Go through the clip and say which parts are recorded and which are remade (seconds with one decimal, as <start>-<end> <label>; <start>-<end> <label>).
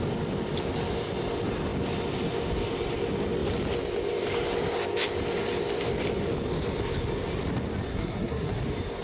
0.0-7.9 recorded; 7.9-8.6 remade; 8.6-9.0 recorded